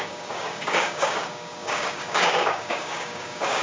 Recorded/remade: remade